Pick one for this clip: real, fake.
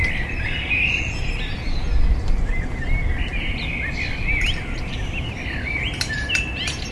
real